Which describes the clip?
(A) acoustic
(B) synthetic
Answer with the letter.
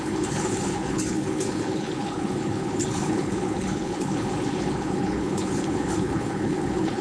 B